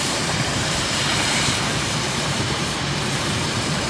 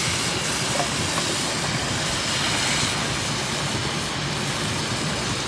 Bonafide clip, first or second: second